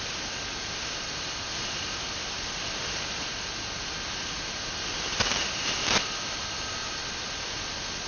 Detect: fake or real real